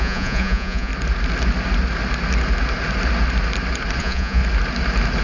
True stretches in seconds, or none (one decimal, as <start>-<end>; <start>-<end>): 0.9-4.0; 4.4-5.2